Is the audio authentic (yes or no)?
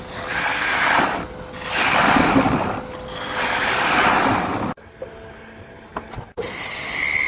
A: yes